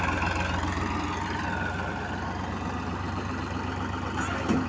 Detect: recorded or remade recorded